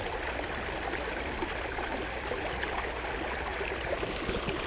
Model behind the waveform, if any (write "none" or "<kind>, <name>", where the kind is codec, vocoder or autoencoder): none